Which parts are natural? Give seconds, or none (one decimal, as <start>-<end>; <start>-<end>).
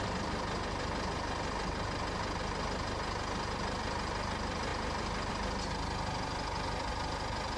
0.0-7.6